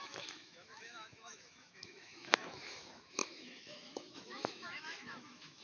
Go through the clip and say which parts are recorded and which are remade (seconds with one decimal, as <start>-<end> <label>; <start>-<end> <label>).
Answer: 0.0-5.6 remade